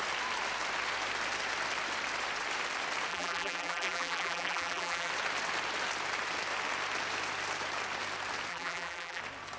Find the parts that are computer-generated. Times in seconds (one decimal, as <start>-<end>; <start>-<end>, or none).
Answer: 3.1-5.1; 8.5-9.2